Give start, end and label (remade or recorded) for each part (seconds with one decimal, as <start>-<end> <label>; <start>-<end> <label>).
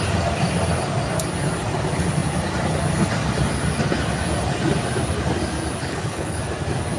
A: 0.0-5.8 recorded; 5.8-6.4 remade; 6.4-7.0 recorded